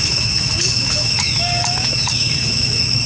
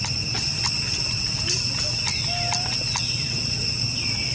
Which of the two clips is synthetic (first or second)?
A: first